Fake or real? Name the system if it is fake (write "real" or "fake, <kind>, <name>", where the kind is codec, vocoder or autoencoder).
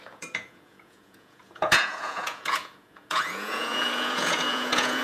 fake, vocoder, Vocos